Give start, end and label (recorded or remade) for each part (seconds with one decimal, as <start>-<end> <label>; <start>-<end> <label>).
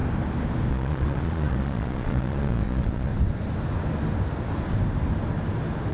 0.0-0.7 recorded; 0.7-3.1 remade; 3.1-5.9 recorded